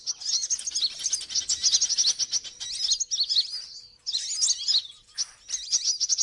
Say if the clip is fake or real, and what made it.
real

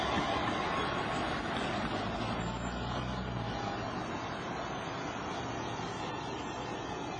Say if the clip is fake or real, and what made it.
real